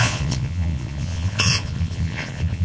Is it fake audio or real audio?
fake